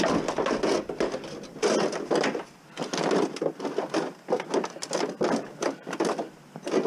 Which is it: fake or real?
real